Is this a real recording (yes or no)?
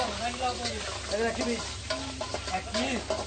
yes